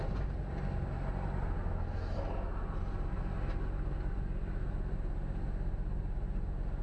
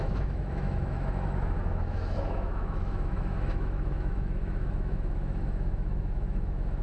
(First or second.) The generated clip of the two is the second